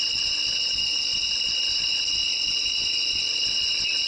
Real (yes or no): yes